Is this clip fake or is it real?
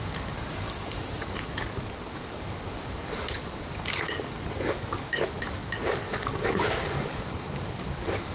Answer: fake